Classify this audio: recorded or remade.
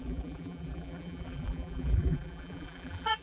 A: remade